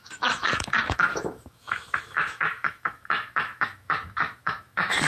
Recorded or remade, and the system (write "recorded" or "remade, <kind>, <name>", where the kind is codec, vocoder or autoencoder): remade, autoencoder, DAC-VAE